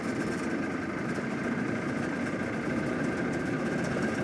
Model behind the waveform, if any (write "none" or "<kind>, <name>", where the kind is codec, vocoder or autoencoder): none